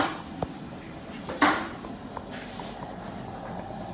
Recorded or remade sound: recorded